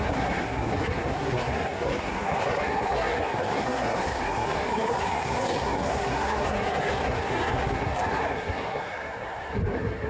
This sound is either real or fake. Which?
fake